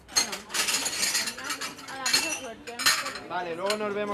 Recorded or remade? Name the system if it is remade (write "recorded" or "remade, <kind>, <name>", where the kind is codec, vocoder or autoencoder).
recorded